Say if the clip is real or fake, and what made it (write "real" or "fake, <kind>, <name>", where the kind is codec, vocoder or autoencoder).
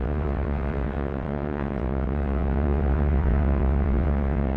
fake, vocoder, WaveNeXt